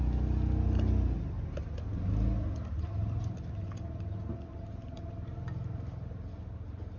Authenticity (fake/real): real